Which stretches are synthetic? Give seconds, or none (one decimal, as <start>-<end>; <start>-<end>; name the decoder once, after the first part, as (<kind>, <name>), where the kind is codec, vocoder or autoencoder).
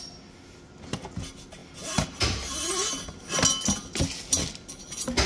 none